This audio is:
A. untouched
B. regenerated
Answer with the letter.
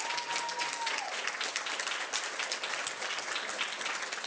A